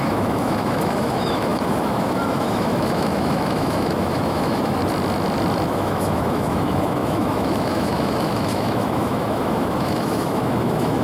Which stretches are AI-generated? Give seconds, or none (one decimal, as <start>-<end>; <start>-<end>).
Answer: 0.0-4.8; 5.7-11.0